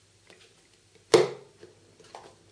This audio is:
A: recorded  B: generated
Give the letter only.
A